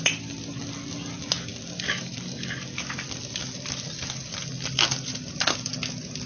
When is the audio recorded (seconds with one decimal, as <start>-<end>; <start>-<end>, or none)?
0.0-6.3